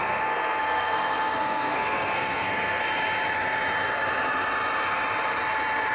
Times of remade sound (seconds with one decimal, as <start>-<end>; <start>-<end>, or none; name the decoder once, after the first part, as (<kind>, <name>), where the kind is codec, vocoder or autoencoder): 0.0-2.8 (codec, SNAC)